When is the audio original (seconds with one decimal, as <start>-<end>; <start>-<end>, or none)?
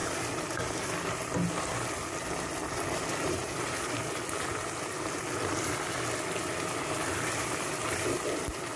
0.0-8.8